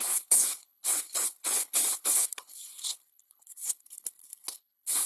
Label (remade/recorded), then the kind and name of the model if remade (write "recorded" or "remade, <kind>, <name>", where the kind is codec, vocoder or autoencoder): remade, codec, HILCodec